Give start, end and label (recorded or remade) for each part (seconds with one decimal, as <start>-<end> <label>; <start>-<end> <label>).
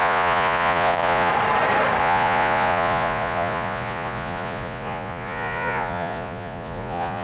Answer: 0.0-1.3 remade; 1.3-2.0 recorded; 2.0-7.2 remade